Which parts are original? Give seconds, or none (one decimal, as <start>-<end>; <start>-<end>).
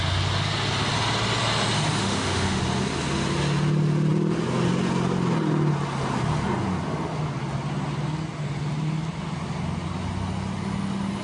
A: 0.0-2.0; 2.6-11.2